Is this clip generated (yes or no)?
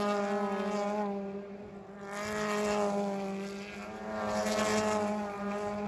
no